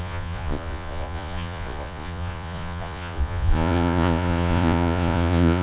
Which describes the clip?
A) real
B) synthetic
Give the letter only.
B